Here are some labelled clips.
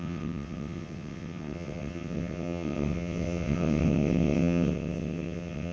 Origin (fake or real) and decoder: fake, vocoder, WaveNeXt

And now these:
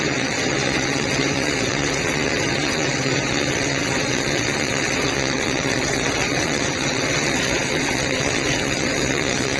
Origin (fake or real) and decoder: fake, vocoder, WaveNeXt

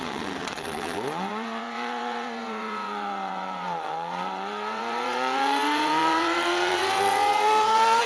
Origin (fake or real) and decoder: fake, vocoder, WaveNeXt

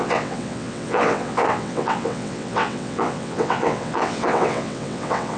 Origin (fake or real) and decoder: fake, vocoder, WaveNeXt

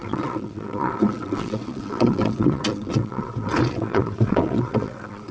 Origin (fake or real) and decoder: fake, vocoder, WaveNeXt